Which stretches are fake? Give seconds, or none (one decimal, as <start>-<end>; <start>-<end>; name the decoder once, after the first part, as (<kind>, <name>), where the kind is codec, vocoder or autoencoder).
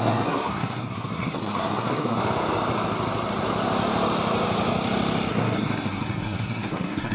0.0-2.2 (codec, SNAC); 5.3-7.1